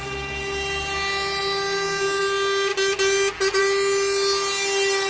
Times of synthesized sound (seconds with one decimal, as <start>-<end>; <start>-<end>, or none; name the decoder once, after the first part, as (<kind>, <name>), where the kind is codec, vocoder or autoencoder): none